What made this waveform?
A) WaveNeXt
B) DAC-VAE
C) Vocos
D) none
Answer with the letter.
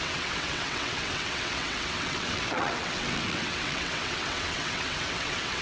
A